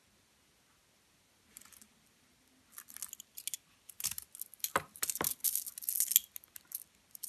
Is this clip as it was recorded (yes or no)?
yes